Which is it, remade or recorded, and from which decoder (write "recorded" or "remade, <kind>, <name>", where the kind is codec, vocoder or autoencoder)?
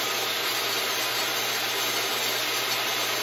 recorded